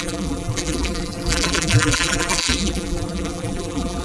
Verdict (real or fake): fake